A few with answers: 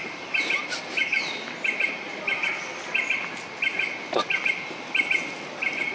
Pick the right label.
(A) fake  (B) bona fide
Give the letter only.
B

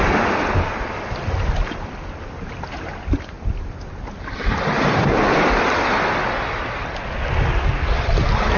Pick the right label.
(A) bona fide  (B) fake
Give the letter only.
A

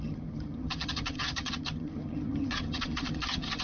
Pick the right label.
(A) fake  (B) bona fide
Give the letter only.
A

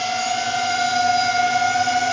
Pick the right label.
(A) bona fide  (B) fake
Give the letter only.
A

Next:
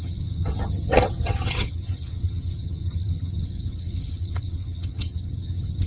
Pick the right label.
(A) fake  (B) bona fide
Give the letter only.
A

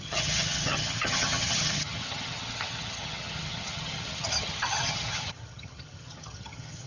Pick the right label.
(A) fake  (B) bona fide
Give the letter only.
A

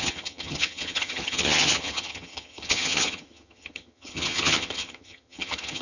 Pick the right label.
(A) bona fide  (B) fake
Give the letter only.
B